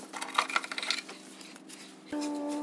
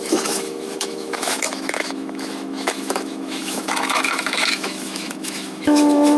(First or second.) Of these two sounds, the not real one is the second